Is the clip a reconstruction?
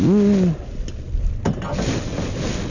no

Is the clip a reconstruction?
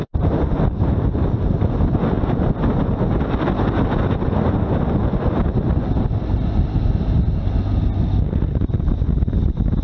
no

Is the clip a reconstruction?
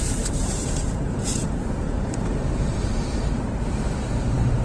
yes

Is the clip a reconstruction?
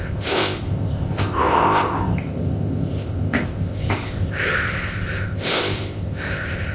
yes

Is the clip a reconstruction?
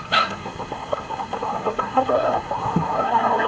yes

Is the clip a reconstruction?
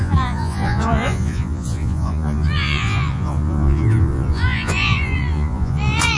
yes